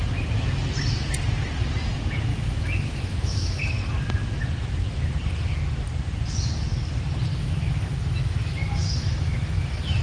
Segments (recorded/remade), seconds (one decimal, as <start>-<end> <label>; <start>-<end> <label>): 0.0-2.3 recorded; 2.3-3.6 remade; 3.6-7.3 recorded; 7.3-10.0 remade